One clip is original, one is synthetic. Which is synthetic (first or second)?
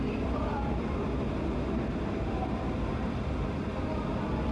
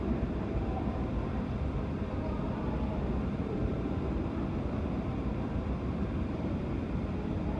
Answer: second